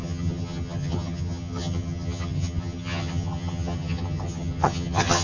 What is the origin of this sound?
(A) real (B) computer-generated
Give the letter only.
B